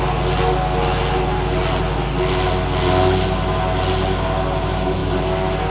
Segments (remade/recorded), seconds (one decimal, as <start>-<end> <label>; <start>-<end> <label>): 0.0-5.7 recorded